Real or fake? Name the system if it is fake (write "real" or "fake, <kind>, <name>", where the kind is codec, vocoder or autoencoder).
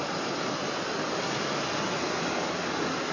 real